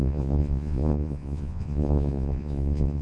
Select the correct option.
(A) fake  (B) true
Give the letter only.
A